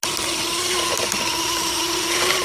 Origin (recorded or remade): recorded